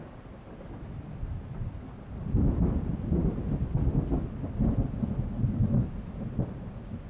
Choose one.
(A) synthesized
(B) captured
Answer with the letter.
B